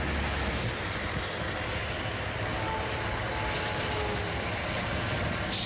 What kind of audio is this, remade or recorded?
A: recorded